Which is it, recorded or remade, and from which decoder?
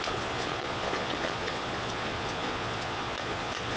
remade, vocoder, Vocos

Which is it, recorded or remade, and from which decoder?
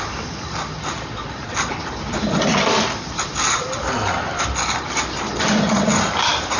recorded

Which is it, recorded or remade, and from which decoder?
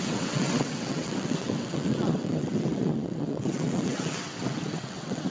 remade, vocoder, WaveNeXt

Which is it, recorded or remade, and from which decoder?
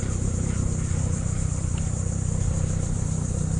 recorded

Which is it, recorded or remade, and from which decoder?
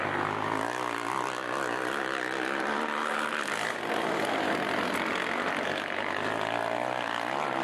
recorded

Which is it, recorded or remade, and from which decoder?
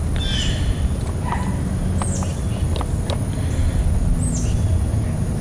recorded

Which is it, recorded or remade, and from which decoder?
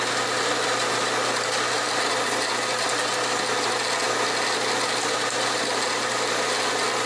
recorded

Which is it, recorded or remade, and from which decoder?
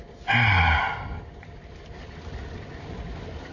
recorded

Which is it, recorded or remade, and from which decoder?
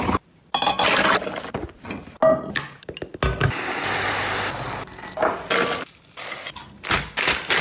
recorded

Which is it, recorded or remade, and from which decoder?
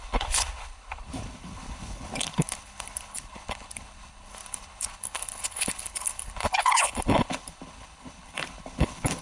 remade, codec, HILCodec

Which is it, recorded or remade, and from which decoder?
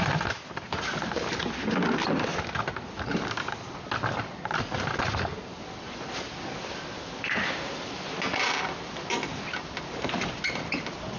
recorded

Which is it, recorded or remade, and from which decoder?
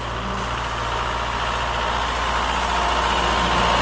recorded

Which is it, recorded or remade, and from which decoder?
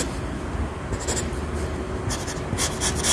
recorded